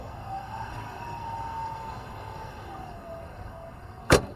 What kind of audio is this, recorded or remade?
remade